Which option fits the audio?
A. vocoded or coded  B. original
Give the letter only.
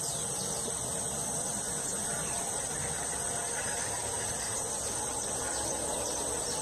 B